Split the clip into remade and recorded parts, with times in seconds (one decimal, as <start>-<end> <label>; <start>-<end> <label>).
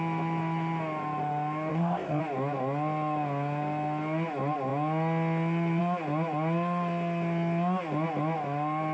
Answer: 0.0-1.7 recorded; 1.7-2.2 remade; 2.2-8.9 recorded